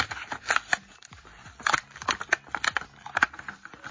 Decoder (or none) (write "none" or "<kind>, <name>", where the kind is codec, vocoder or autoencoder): none